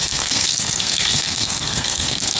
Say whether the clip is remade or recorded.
remade